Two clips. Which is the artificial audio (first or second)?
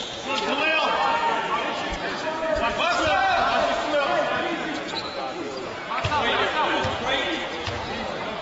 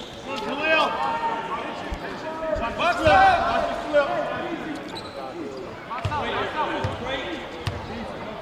first